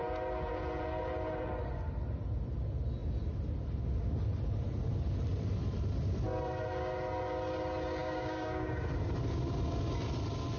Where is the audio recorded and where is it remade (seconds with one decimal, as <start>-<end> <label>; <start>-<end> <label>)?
0.0-8.0 recorded; 8.0-8.7 remade; 8.7-10.6 recorded